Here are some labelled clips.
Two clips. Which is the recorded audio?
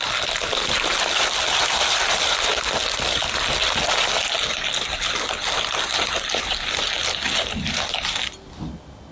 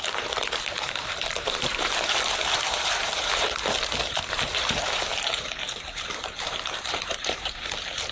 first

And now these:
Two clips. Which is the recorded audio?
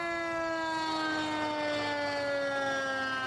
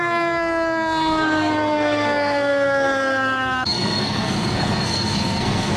first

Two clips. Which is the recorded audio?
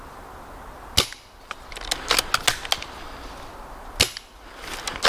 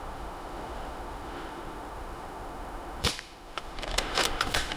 first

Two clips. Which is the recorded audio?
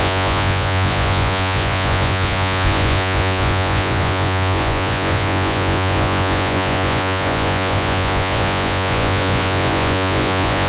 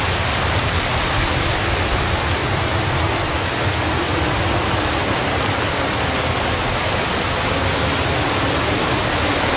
second